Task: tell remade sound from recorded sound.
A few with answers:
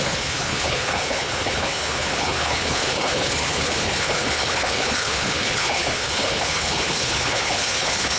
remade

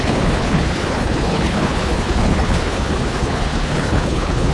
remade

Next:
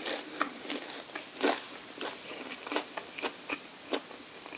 recorded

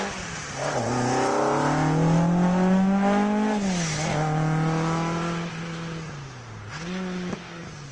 recorded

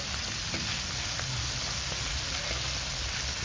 recorded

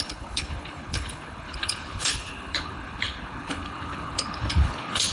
remade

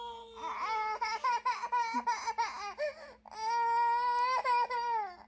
recorded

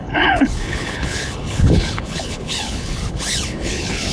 remade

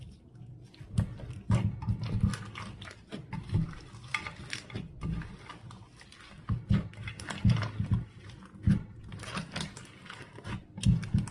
recorded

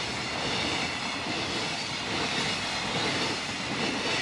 recorded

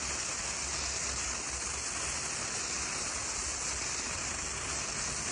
recorded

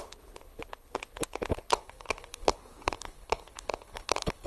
remade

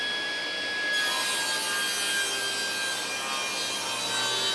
recorded